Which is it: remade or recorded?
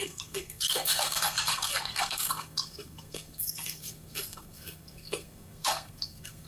remade